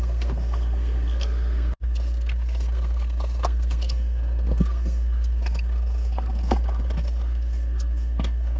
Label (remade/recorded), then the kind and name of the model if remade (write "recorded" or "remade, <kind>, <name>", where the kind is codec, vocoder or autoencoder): remade, codec, SNAC